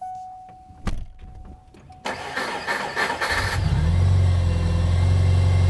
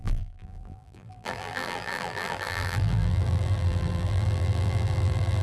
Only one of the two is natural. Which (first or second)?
first